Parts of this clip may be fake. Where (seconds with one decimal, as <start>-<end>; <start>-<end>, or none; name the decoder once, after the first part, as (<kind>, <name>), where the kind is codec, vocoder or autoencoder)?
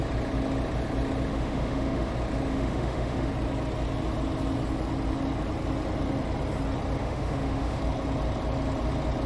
1.3-2.1 (autoencoder, DAC-VAE); 2.5-3.3; 7.0-7.8